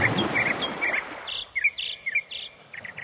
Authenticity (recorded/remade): recorded